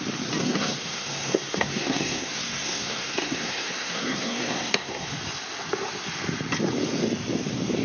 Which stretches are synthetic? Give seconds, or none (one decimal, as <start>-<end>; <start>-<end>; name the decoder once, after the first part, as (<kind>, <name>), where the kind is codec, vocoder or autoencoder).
0.4-5.1 (codec, SNAC)